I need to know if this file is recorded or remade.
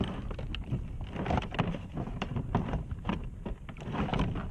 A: recorded